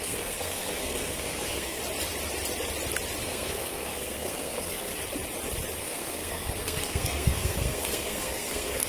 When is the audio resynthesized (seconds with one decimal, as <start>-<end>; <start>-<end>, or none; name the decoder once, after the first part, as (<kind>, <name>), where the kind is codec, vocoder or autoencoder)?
0.0-1.8 (codec, SNAC); 3.2-4.9; 5.8-8.9